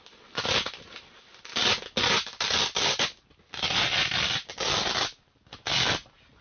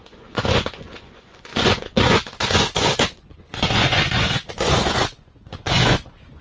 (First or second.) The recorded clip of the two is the first